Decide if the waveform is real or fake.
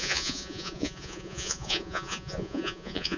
fake